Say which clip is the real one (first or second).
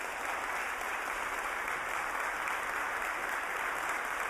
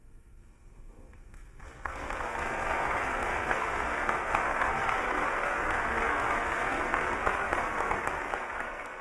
first